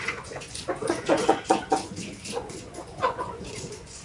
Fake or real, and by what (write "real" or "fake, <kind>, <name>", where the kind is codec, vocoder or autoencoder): fake, vocoder, Vocos